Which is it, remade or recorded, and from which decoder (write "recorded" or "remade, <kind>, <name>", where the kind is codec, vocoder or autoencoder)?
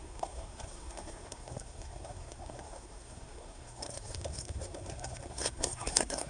remade, codec, SNAC